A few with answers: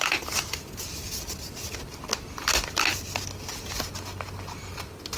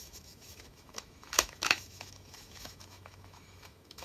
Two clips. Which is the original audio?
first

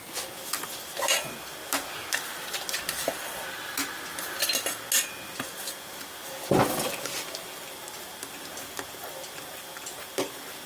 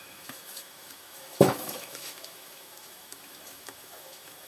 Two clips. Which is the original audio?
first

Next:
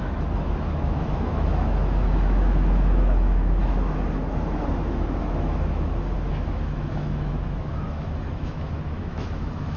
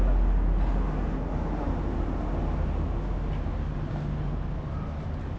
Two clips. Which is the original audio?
second